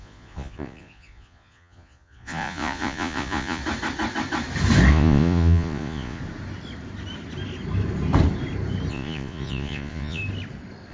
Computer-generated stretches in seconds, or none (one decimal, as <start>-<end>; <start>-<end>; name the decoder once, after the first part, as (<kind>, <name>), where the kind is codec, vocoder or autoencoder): 0.0-3.6 (vocoder, Vocos); 4.9-6.2; 8.9-10.2